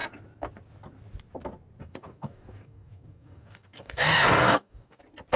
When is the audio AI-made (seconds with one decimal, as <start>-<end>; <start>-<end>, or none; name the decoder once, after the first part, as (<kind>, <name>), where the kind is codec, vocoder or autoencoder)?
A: 1.8-5.0 (codec, DAC)

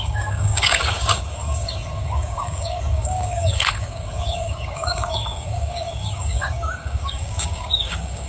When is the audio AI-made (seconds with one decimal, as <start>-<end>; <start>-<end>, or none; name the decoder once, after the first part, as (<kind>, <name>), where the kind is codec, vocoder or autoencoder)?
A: 0.0-8.3 (codec, DAC)